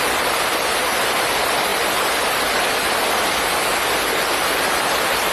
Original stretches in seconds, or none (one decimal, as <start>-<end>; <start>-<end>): 0.0-5.3